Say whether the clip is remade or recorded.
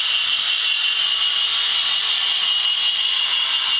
recorded